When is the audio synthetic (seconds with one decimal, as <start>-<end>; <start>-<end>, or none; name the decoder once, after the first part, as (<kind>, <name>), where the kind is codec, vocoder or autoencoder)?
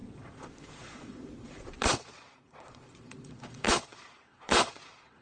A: 0.0-5.2 (vocoder, Vocos)